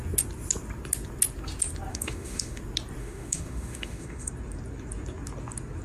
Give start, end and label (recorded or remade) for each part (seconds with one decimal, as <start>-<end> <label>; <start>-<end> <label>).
0.0-1.9 recorded; 1.9-2.6 remade; 2.6-3.0 recorded; 3.0-4.3 remade; 4.3-5.8 recorded